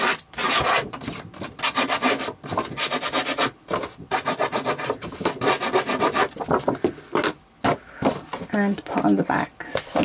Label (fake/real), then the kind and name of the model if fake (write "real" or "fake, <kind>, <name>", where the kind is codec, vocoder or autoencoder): real